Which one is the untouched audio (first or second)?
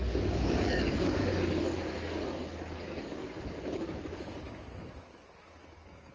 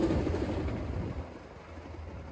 second